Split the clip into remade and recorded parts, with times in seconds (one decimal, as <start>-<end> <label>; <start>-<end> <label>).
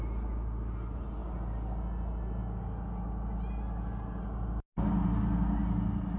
0.0-6.2 recorded